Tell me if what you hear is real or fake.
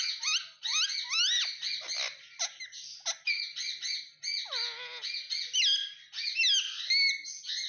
real